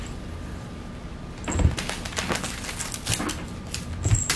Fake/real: real